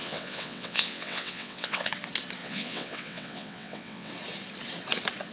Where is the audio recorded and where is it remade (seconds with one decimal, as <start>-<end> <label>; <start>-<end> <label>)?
0.0-1.9 remade; 1.9-2.4 recorded; 2.4-4.1 remade; 4.1-5.3 recorded